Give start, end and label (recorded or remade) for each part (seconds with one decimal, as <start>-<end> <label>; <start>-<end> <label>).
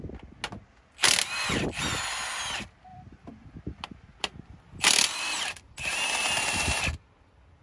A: 0.0-0.7 recorded; 0.7-1.3 remade; 1.3-2.9 recorded; 2.9-6.8 remade; 6.8-7.6 recorded